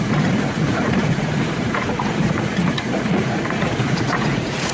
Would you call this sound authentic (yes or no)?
no